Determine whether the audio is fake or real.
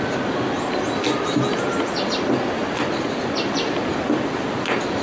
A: real